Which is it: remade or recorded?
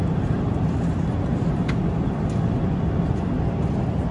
recorded